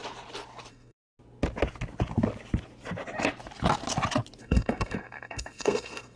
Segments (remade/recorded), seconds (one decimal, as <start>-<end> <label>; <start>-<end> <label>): 0.0-0.7 recorded; 0.7-1.1 remade; 1.1-4.4 recorded; 4.4-6.2 remade